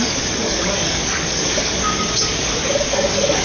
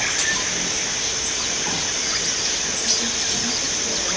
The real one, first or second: second